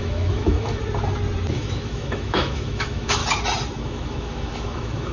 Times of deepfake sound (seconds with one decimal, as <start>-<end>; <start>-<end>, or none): 0.0-0.8; 1.5-3.2; 3.8-5.1